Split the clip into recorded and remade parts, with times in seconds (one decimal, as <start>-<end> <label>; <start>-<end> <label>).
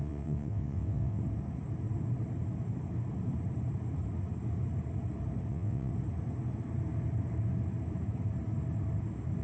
0.0-1.2 remade; 1.2-5.5 recorded; 5.5-5.9 remade; 5.9-9.4 recorded